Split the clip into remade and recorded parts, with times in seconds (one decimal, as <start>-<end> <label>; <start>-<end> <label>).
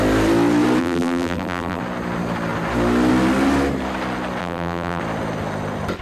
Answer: 0.0-0.8 recorded; 0.8-1.8 remade; 1.8-4.4 recorded; 4.4-5.0 remade; 5.0-6.0 recorded